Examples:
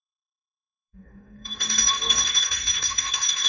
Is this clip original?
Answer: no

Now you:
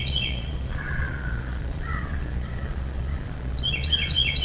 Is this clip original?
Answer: no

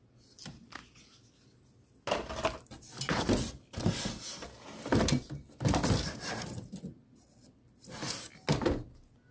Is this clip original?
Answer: yes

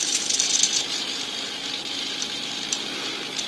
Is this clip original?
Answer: no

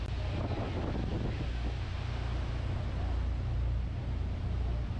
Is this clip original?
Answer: yes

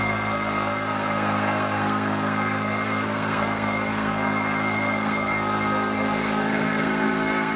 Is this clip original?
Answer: no